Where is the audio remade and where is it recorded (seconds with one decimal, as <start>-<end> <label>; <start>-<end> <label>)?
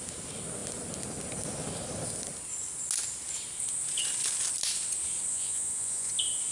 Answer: 0.0-5.3 recorded; 5.3-6.1 remade; 6.1-6.5 recorded